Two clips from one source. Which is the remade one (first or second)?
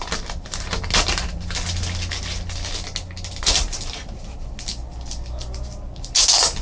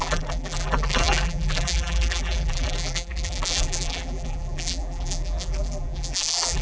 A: second